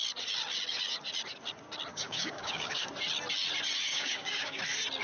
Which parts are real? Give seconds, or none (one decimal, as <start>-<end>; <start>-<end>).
0.0-1.9; 2.9-3.9; 4.6-5.0